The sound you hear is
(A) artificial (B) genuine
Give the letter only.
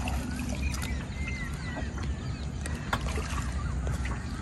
B